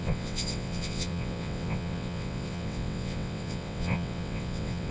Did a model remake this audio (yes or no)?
yes